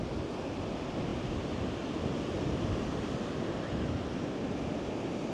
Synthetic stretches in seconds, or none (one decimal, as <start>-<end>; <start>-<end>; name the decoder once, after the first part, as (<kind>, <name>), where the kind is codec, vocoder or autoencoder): none